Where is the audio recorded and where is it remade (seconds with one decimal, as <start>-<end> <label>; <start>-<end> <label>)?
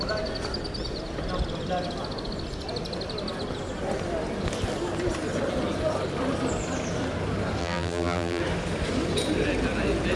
0.0-7.6 recorded; 7.6-8.4 remade; 8.4-10.2 recorded